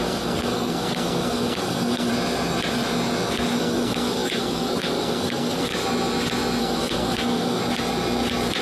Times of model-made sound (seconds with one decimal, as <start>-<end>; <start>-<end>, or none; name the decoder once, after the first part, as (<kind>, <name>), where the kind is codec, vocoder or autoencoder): 0.0-2.1 (codec, SNAC); 3.6-5.7; 6.6-7.6